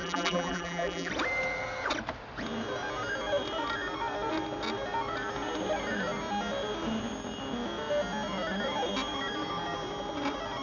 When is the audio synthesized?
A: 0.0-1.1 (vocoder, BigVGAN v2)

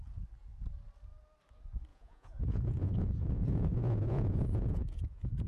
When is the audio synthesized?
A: 1.9-5.5 (vocoder, Vocos)

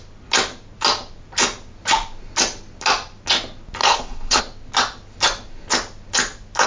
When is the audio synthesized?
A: 3.8-4.4 (codec, HILCodec)

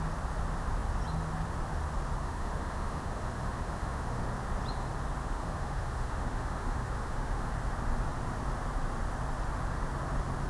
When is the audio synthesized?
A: 2.2-4.2 (autoencoder, DAC-VAE); 5.2-7.5